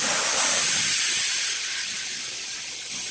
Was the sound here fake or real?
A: real